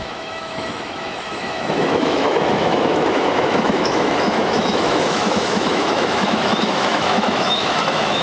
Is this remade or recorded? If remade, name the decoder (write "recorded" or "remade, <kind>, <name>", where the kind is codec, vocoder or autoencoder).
remade, autoencoder, DAC-VAE